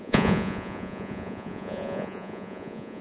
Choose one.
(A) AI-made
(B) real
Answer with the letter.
A